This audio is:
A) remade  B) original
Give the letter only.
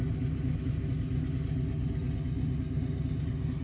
B